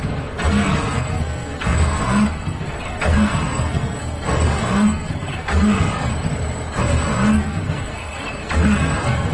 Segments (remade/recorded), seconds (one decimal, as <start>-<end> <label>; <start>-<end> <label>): 0.0-6.1 remade; 6.1-6.8 recorded; 6.8-9.3 remade